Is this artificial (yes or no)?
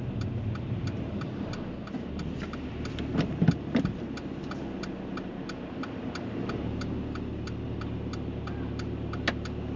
no